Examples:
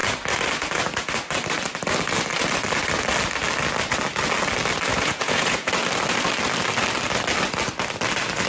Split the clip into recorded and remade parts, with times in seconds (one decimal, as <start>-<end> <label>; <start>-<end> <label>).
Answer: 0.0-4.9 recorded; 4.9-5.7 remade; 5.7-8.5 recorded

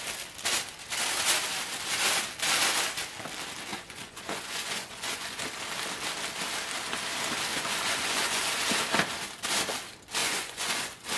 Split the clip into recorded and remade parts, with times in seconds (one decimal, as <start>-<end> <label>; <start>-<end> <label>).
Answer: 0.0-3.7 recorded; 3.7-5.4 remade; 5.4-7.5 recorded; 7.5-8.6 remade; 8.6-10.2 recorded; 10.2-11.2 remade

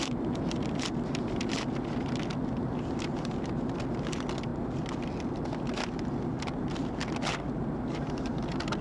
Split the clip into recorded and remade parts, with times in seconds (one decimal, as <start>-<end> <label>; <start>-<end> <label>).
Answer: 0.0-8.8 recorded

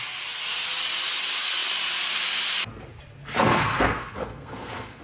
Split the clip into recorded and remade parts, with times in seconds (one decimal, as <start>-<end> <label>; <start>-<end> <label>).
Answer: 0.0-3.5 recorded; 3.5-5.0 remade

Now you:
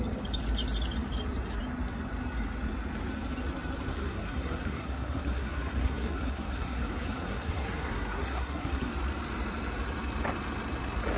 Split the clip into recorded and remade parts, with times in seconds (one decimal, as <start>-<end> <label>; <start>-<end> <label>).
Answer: 0.0-3.9 recorded; 3.9-8.9 remade; 8.9-11.2 recorded

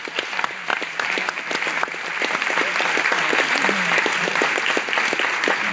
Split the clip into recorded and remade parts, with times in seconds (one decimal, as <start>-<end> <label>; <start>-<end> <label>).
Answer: 0.0-0.7 recorded; 0.7-1.4 remade; 1.4-5.7 recorded